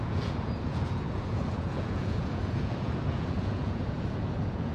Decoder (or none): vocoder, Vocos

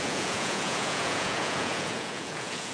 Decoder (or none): vocoder, Vocos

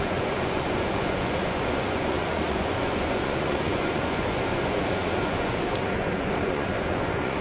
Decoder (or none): vocoder, Vocos